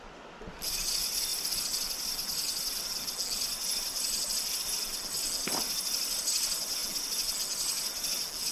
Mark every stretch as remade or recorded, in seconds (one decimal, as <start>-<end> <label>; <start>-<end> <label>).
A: 0.0-8.5 recorded